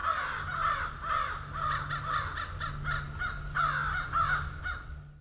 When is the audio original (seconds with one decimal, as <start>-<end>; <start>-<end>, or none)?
0.0-5.2